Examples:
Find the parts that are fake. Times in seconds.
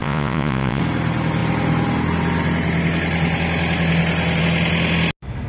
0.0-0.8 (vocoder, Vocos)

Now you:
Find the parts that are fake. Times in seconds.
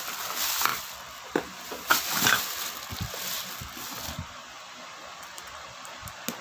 none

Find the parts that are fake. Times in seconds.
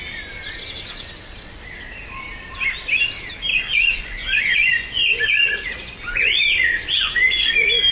3.5-7.5 (vocoder, Vocos)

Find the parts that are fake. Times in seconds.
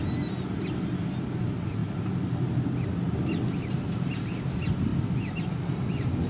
none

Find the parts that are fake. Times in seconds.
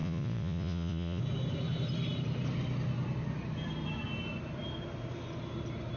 0.0-1.2 (vocoder, Vocos)